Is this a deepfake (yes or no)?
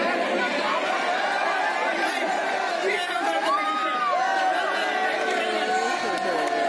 no